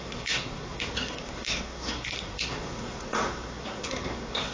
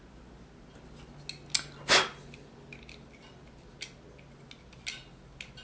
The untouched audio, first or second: second